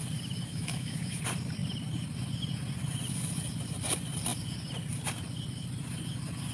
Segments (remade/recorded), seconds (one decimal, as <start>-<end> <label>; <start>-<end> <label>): 0.0-0.5 recorded; 0.5-1.2 remade; 1.2-6.5 recorded